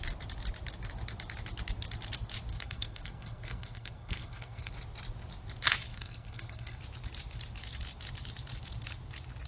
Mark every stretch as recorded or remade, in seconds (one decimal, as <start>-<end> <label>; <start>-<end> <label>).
0.0-2.5 recorded; 2.5-4.7 remade; 4.7-5.9 recorded; 5.9-6.8 remade; 6.8-9.5 recorded